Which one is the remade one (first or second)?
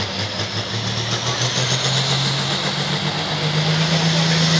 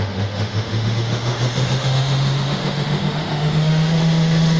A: second